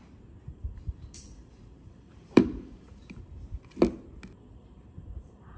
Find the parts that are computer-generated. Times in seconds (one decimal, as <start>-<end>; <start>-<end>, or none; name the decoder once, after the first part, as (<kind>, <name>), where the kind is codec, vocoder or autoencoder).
0.5-3.3 (vocoder, BigVGAN v2); 4.5-5.6